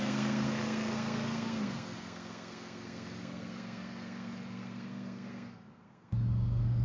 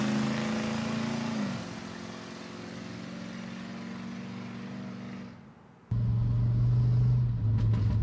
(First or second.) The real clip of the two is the second